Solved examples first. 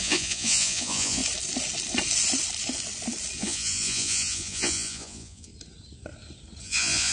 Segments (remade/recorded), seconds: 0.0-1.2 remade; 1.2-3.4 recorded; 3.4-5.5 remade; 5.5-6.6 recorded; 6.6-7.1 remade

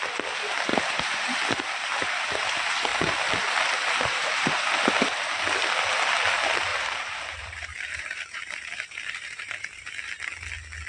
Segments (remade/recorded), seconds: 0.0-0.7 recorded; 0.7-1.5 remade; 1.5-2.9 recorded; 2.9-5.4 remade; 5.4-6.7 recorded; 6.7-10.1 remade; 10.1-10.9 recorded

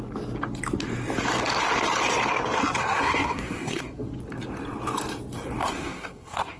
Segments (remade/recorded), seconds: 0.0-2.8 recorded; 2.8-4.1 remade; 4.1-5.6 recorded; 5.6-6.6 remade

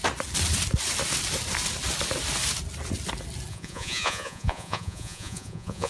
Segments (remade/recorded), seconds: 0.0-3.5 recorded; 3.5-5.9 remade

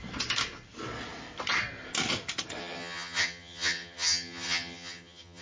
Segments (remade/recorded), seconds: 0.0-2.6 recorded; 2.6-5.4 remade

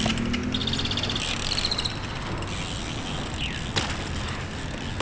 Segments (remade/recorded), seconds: 0.0-5.0 recorded

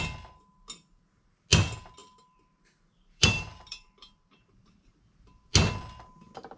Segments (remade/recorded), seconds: 0.0-2.0 recorded; 2.0-5.0 remade; 5.0-6.6 recorded